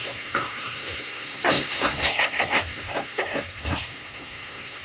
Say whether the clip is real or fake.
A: fake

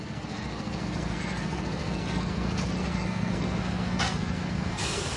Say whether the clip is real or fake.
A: fake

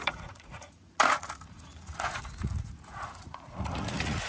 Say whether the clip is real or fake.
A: fake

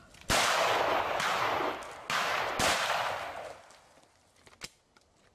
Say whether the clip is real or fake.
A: real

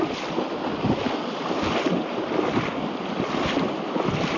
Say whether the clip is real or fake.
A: real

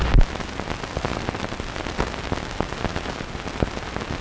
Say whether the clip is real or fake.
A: real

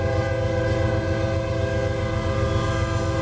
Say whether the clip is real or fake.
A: real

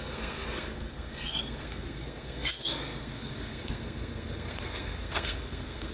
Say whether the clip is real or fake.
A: fake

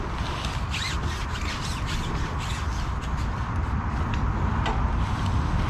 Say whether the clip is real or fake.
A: real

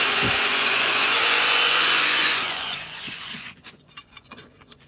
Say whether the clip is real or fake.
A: fake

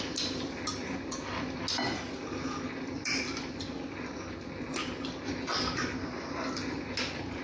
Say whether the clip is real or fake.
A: real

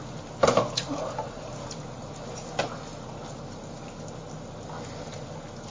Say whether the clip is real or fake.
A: real